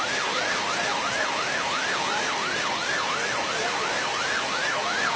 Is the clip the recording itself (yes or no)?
yes